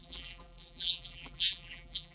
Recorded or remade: remade